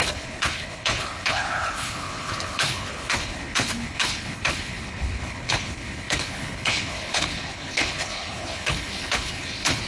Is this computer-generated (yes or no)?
yes